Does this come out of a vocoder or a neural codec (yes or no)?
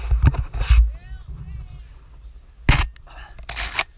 no